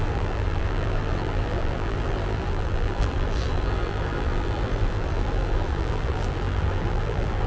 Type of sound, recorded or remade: remade